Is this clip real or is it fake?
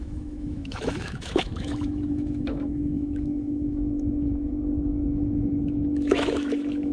fake